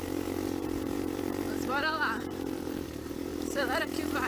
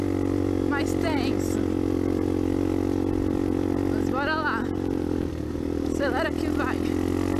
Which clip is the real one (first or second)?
second